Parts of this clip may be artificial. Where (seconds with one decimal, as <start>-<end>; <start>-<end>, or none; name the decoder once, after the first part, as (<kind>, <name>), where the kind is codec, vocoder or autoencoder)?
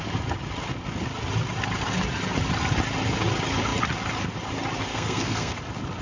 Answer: 4.9-5.6 (codec, SNAC)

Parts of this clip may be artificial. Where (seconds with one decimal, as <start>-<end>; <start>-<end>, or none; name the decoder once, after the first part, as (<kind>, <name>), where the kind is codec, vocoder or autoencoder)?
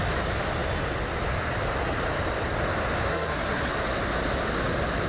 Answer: 3.1-3.7 (codec, SNAC)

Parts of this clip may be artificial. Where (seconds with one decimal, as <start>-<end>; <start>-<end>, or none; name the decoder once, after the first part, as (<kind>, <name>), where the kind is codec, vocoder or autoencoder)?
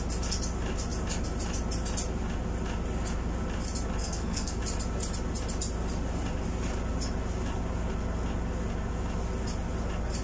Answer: 4.0-4.6 (codec, SNAC)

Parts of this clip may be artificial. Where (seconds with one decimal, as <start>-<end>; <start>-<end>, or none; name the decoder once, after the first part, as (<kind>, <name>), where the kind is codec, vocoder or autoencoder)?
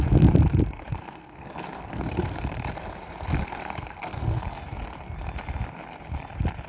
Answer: 0.8-1.5 (codec, SNAC); 1.9-2.4; 3.4-4.4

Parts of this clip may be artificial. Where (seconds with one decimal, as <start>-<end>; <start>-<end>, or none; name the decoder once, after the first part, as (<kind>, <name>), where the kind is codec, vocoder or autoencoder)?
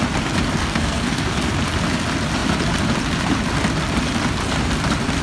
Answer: 0.6-1.5 (codec, SNAC)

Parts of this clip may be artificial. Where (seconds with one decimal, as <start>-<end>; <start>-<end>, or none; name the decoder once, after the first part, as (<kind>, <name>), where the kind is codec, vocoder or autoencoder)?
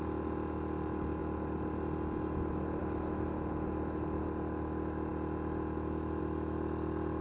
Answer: none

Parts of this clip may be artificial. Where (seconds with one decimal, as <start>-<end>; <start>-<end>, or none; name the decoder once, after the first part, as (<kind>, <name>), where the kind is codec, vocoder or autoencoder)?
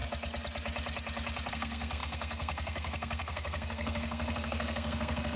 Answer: 1.5-5.4 (codec, SNAC)